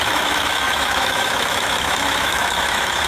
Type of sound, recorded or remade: remade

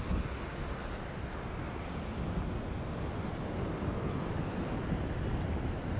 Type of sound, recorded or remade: recorded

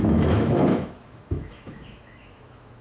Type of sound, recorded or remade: remade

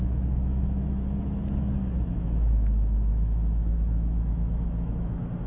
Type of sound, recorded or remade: remade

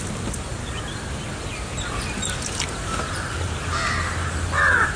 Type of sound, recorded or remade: recorded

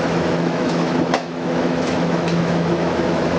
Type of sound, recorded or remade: remade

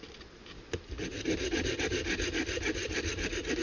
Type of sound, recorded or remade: recorded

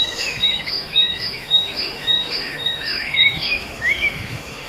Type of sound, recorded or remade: remade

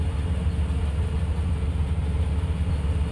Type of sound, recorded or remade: recorded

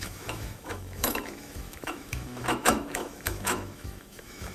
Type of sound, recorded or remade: remade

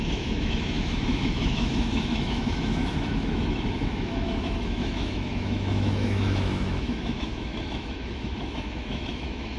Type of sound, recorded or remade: remade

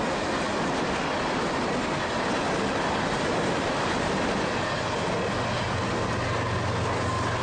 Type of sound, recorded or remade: recorded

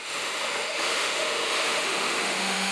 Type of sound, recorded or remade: remade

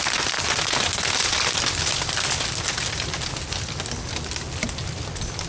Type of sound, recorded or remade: recorded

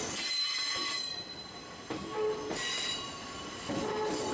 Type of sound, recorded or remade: recorded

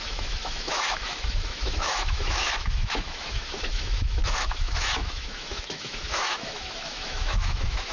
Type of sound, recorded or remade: remade